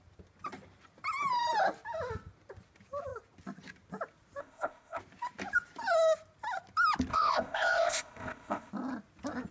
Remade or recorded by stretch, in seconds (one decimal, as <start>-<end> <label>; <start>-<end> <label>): 0.0-4.4 recorded; 4.4-5.0 remade; 5.0-7.1 recorded; 7.1-8.7 remade; 8.7-9.5 recorded